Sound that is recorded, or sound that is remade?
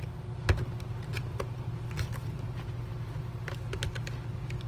recorded